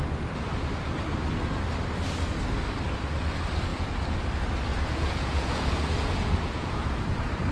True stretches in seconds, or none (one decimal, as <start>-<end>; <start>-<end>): 0.0-3.7; 4.2-4.7; 7.0-7.5